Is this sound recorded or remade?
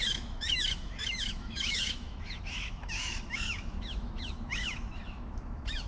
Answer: remade